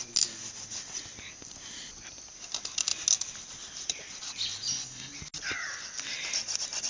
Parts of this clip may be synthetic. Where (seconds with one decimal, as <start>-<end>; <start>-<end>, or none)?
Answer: none